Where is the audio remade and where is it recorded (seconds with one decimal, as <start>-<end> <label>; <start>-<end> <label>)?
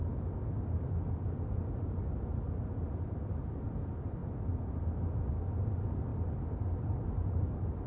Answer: 0.0-7.9 recorded